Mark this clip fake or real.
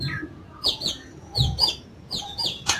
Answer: fake